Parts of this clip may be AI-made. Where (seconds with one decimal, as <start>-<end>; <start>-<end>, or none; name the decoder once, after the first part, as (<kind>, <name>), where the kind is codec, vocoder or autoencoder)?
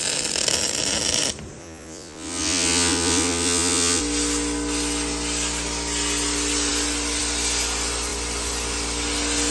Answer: 1.6-4.0 (vocoder, Vocos)